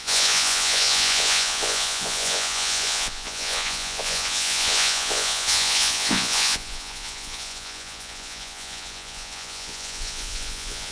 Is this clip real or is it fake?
fake